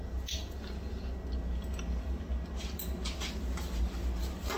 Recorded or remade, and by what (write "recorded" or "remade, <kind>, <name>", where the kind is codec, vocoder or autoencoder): recorded